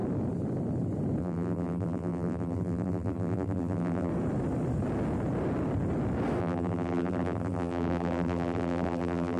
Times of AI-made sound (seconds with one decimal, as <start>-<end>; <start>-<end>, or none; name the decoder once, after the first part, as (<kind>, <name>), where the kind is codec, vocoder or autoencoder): 1.2-4.1 (vocoder, BigVGAN v2); 6.4-9.4